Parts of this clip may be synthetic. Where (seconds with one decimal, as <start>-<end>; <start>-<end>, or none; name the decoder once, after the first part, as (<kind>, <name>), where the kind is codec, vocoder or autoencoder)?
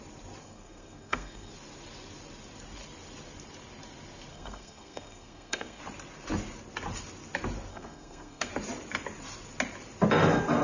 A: 0.4-1.5 (codec, SNAC); 4.3-5.8; 7.7-8.5